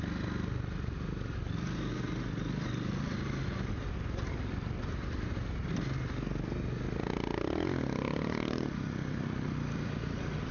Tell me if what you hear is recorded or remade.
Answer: recorded